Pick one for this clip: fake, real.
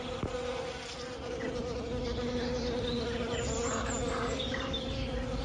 real